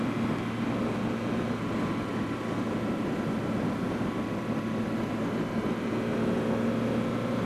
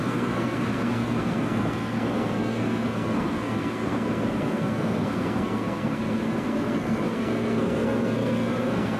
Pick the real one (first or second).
first